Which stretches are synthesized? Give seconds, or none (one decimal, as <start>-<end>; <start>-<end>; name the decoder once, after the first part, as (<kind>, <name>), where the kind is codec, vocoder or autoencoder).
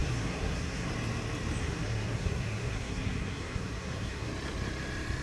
0.0-0.9 (codec, SNAC); 1.6-4.3